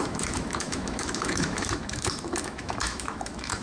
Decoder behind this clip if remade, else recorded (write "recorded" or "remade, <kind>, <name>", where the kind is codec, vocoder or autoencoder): remade, autoencoder, DAC-VAE